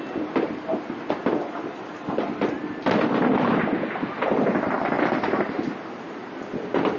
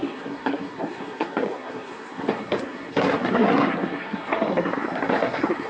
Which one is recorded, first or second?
first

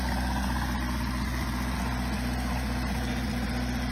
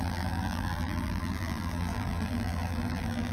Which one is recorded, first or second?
first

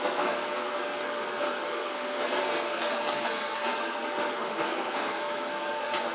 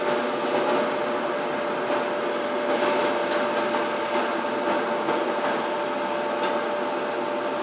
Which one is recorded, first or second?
second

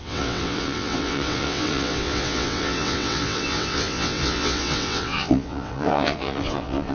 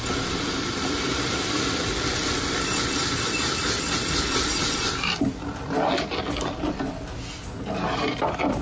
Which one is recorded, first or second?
second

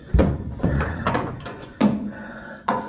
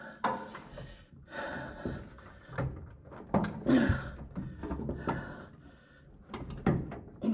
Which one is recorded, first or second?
second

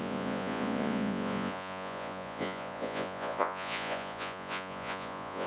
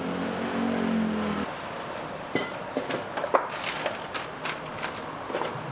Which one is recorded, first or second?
second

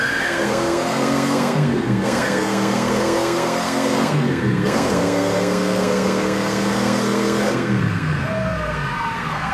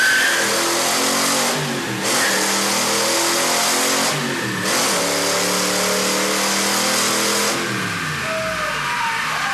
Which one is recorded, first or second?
second